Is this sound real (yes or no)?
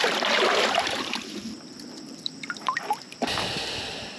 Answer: no